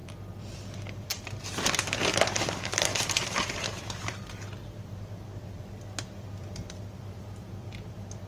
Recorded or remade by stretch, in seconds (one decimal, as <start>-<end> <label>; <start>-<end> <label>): 0.0-8.3 remade